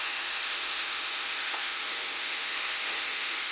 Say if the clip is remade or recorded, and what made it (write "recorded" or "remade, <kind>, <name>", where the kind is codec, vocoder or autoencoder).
remade, autoencoder, DAC-VAE